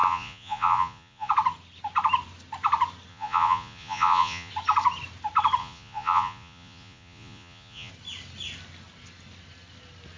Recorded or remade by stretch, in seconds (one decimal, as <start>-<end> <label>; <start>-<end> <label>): 0.0-1.3 remade; 1.3-3.1 recorded; 3.1-4.5 remade; 4.5-5.6 recorded; 5.6-7.9 remade; 7.9-10.2 recorded